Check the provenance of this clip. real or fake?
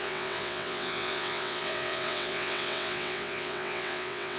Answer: fake